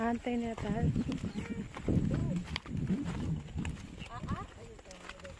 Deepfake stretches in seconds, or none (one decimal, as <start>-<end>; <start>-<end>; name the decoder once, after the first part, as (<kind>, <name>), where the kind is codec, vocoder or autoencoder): none